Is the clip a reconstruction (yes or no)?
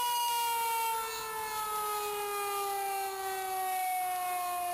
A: no